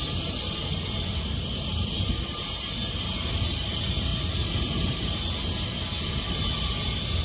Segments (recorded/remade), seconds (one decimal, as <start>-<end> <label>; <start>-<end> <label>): 0.0-7.2 recorded